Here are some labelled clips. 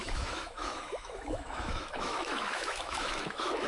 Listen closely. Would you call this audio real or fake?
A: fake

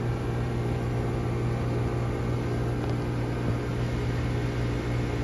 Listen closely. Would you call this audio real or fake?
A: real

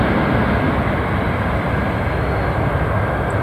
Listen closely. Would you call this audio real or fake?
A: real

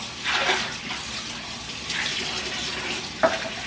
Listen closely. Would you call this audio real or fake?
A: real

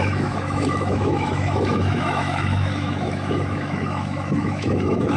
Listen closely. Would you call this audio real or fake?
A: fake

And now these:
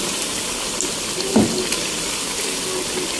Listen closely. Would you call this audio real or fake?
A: real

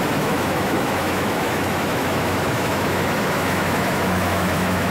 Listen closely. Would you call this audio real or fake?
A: fake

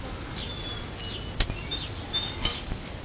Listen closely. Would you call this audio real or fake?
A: real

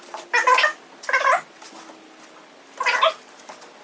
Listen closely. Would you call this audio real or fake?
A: real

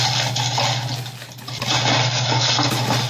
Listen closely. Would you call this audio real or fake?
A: real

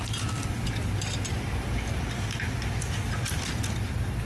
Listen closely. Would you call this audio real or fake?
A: real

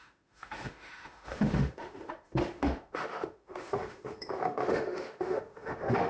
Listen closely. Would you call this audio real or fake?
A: fake